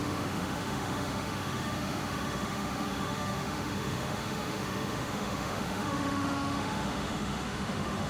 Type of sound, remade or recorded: remade